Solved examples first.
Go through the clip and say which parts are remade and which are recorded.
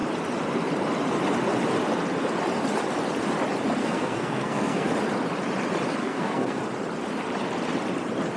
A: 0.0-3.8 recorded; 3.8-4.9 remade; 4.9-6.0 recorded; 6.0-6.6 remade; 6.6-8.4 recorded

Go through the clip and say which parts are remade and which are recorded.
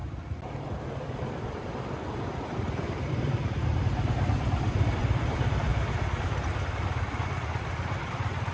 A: 0.0-5.7 remade; 5.7-6.9 recorded; 6.9-8.5 remade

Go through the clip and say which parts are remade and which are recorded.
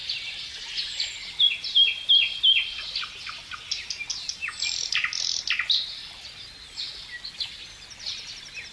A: 0.0-8.7 recorded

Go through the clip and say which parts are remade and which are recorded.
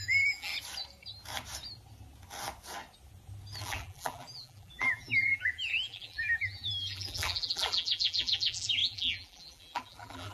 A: 0.0-0.5 remade; 0.5-3.6 recorded; 3.6-10.3 remade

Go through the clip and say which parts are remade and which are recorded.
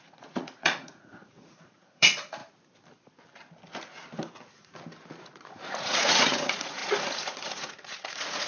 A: 0.0-2.4 remade; 2.4-5.2 recorded; 5.2-8.5 remade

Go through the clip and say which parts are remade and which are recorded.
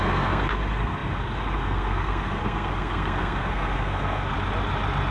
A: 0.0-4.3 remade; 4.3-5.1 recorded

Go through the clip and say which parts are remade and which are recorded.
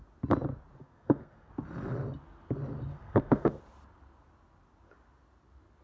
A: 0.0-0.8 recorded; 0.8-1.5 remade; 1.5-2.9 recorded; 2.9-3.6 remade; 3.6-5.8 recorded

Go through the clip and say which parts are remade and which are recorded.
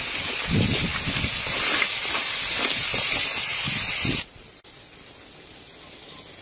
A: 0.0-6.4 recorded